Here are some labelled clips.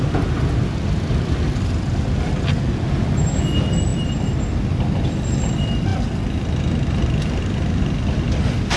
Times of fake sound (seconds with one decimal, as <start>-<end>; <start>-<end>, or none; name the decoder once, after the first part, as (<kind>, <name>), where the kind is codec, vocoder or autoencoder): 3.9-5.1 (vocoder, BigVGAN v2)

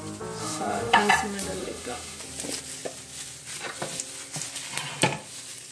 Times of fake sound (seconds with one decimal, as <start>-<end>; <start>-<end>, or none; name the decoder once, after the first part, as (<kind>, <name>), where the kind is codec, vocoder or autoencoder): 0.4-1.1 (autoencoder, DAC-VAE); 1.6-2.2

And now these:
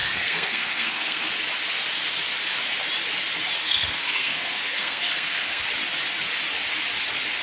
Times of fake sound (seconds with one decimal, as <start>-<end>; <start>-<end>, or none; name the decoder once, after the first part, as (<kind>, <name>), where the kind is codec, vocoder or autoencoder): 0.0-1.3 (codec, SNAC); 3.6-5.6

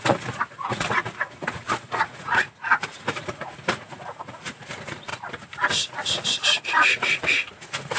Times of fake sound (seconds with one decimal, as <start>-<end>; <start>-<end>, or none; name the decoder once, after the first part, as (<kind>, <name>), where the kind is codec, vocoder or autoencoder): 0.0-5.1 (vocoder, Vocos); 6.7-8.0

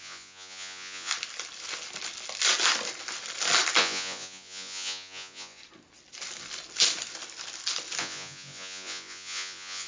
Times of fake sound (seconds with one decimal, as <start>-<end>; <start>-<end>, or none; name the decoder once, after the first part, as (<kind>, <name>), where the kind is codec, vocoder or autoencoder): 0.0-1.1 (vocoder, Vocos); 3.8-5.6; 8.0-9.9

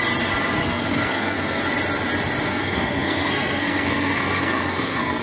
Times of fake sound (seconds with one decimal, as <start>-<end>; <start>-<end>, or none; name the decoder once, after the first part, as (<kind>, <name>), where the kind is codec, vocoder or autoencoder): 0.6-1.6 (codec, SNAC); 2.5-5.2

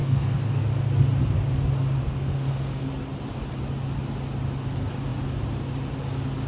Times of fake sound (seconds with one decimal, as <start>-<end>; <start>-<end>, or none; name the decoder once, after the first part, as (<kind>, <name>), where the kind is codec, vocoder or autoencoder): 0.0-0.6 (codec, SNAC); 2.0-2.9